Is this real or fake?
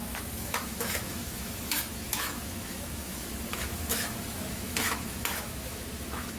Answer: fake